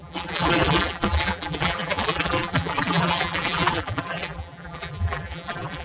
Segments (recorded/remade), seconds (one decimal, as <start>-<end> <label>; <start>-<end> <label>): 0.0-5.8 remade